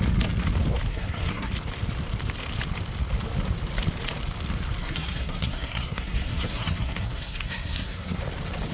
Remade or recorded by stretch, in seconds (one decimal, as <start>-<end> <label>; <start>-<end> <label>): 0.0-0.9 recorded; 0.9-1.5 remade; 1.5-4.8 recorded; 4.8-8.2 remade; 8.2-8.7 recorded